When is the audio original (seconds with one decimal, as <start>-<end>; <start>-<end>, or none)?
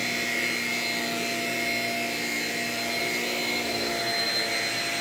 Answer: 0.0-5.0